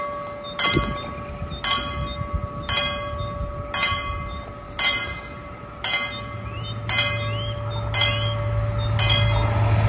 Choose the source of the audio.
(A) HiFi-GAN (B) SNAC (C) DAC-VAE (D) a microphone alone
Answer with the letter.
D